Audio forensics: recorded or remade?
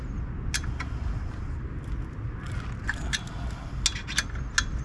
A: recorded